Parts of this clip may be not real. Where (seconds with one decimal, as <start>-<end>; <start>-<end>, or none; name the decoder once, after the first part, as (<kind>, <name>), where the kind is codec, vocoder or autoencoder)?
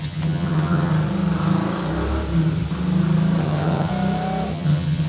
0.0-0.9 (vocoder, HiFi-GAN); 3.4-3.9; 4.5-5.1